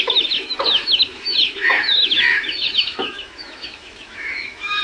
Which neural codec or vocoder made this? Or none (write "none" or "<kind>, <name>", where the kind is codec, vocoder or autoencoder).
autoencoder, DAC-VAE